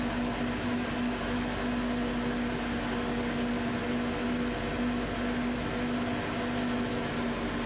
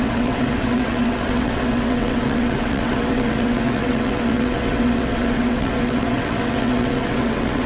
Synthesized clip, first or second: second